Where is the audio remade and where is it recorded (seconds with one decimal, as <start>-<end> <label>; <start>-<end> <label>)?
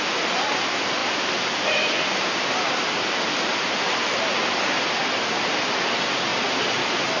0.0-1.0 recorded; 1.0-4.2 remade; 4.2-7.2 recorded